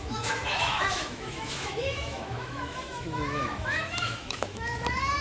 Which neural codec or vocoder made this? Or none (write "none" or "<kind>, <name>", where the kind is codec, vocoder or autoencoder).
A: autoencoder, DAC-VAE